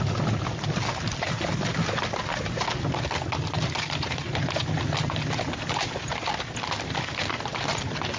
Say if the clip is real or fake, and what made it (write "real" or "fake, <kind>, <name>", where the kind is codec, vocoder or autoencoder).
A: real